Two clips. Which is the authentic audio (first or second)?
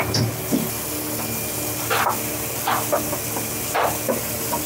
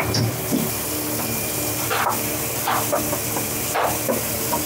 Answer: first